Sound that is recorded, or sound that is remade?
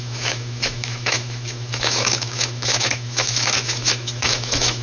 remade